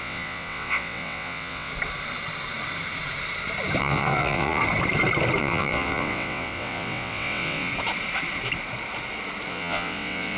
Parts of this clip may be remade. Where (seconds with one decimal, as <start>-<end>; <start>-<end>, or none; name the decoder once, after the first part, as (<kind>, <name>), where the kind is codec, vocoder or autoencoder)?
0.0-1.7 (vocoder, WaveNeXt); 3.8-4.6; 5.4-7.7; 9.5-10.4